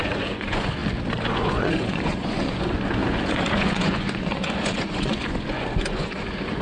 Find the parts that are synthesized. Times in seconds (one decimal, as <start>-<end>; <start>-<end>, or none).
0.0-0.8; 1.3-6.6